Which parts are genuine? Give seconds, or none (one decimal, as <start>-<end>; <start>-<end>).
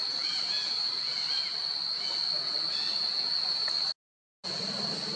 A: 0.0-5.2